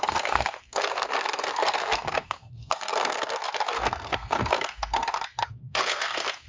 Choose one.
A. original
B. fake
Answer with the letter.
B